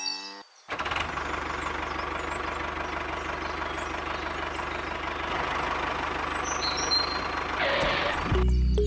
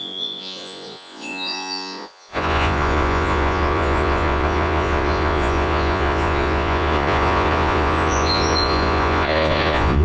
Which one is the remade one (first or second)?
second